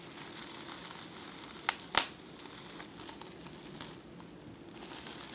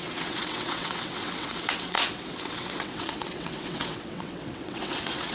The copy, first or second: second